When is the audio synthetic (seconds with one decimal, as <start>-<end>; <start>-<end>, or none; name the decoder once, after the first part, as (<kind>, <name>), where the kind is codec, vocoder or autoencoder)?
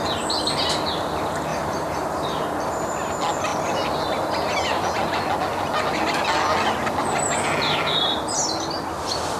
1.5-2.9 (vocoder, BigVGAN v2)